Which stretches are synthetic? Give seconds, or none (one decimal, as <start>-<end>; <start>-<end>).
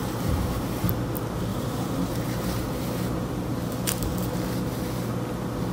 0.0-0.8; 1.5-4.1